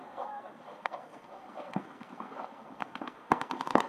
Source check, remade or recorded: remade